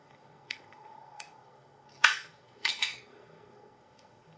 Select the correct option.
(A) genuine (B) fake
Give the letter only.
B